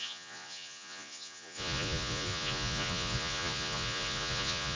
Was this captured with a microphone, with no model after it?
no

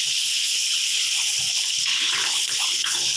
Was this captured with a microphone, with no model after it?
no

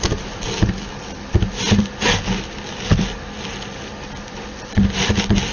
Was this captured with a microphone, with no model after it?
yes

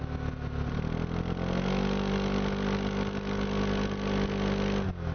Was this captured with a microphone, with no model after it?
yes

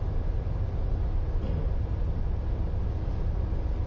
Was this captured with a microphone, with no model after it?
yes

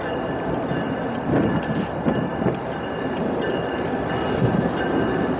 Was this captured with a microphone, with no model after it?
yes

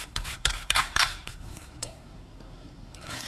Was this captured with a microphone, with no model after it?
no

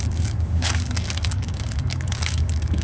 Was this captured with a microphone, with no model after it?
no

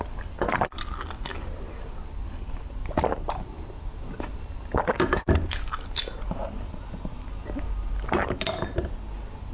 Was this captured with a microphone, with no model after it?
yes